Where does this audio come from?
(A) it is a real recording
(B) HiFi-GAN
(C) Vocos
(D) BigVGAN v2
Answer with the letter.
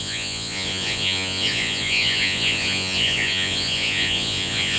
C